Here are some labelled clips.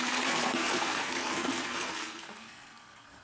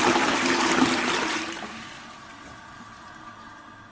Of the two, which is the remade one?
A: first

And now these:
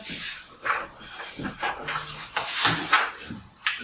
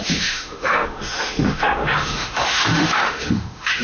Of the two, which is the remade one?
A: second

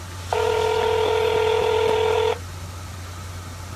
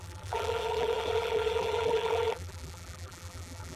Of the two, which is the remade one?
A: second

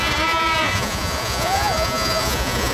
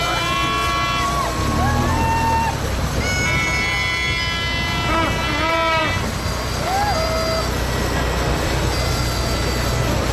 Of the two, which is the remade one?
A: first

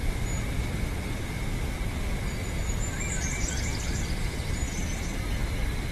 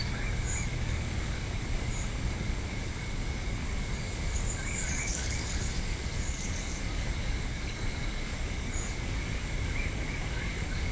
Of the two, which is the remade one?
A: second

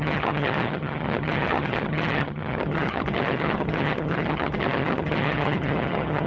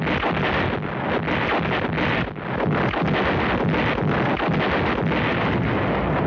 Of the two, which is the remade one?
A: first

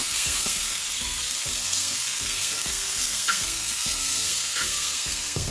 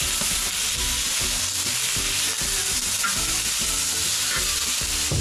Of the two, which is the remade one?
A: first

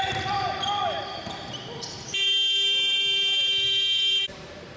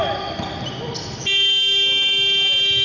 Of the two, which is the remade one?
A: first